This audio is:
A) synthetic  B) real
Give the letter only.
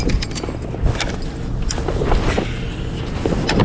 B